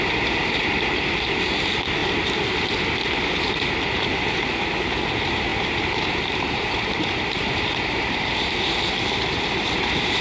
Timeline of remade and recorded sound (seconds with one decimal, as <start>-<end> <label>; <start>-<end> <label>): 0.0-5.5 recorded; 5.5-8.4 remade; 8.4-10.2 recorded